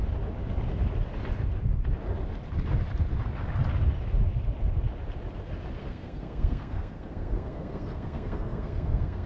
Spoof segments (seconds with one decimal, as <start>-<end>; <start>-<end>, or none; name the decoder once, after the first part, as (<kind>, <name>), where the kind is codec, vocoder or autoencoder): 5.8-9.3 (codec, SNAC)